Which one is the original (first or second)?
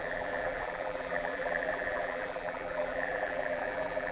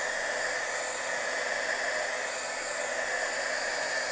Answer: second